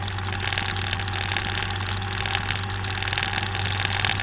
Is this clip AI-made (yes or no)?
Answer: no